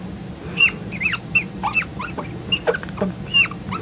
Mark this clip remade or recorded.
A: recorded